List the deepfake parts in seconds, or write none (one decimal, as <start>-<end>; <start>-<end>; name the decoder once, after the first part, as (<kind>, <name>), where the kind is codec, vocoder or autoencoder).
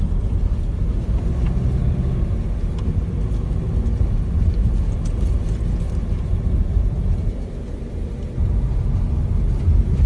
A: none